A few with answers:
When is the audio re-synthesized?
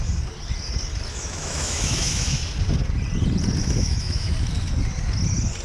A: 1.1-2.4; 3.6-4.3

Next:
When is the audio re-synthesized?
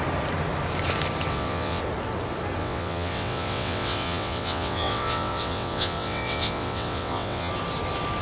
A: 1.3-1.8; 2.6-7.5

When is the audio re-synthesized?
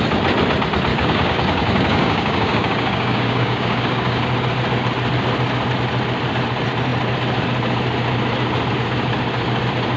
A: 0.9-4.2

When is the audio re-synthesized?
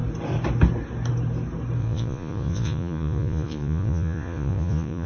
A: 1.8-5.1